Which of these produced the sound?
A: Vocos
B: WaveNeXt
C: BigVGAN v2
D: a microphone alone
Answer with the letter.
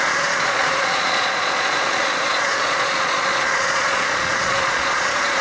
A